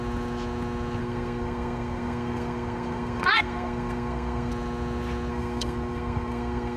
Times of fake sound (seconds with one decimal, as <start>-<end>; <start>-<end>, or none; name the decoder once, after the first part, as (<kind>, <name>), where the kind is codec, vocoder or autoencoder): 1.0-4.5 (codec, SNAC); 5.3-6.8